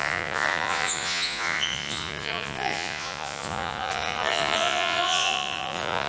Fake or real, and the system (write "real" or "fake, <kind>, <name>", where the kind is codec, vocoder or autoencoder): fake, vocoder, Vocos